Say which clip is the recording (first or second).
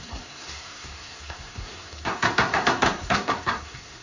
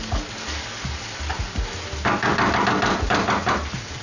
second